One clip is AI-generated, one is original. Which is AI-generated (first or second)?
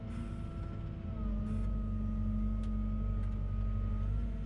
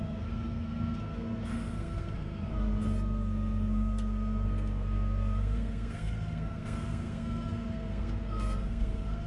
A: second